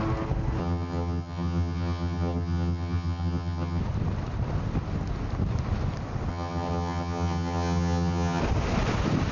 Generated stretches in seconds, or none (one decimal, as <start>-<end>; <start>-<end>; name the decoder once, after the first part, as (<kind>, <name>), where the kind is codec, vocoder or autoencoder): 0.6-3.8 (vocoder, HiFi-GAN); 6.3-8.4